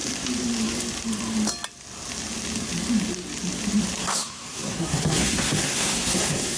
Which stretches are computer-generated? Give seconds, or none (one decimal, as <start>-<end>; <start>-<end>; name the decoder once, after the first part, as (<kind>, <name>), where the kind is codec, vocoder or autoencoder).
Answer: 4.0-6.6 (codec, SNAC)